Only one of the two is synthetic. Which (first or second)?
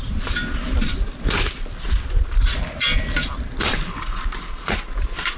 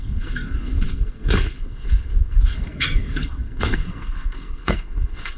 second